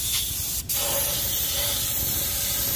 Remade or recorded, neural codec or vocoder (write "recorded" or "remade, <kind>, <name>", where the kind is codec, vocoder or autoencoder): recorded